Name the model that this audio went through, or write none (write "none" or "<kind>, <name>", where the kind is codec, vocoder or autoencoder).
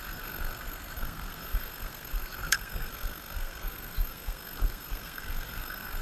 codec, SNAC